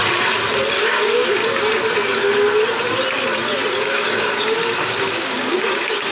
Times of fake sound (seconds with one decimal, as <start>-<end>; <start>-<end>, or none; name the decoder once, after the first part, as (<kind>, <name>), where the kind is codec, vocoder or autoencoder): 0.7-1.4 (codec, DAC); 3.8-6.1